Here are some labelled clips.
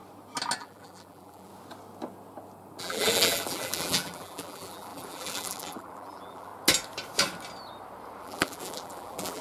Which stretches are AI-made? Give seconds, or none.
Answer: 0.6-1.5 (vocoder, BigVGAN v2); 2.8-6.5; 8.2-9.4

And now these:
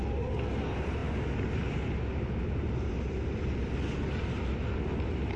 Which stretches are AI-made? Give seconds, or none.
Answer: none